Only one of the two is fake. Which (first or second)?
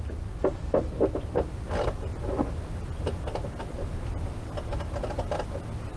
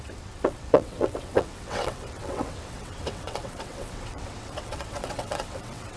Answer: second